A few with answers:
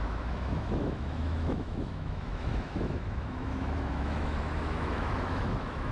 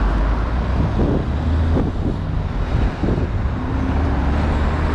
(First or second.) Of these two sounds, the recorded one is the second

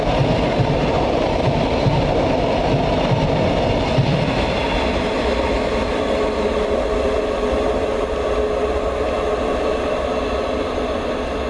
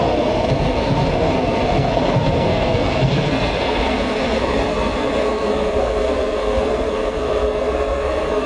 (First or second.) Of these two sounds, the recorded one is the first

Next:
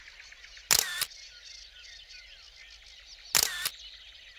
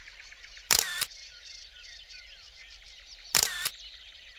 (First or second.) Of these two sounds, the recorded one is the first